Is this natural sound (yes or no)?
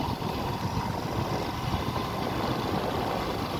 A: no